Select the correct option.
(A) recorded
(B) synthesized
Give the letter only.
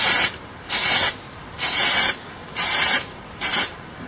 B